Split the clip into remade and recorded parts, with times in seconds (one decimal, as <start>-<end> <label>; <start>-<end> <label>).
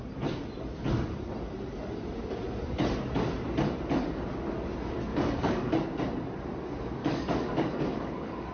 0.0-5.1 recorded; 5.1-5.7 remade; 5.7-7.0 recorded; 7.0-8.5 remade